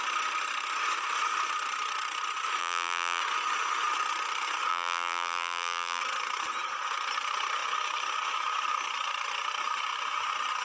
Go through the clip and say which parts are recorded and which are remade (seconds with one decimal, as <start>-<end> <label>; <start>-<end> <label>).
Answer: 0.0-2.6 recorded; 2.6-3.2 remade; 3.2-4.7 recorded; 4.7-6.0 remade; 6.0-10.6 recorded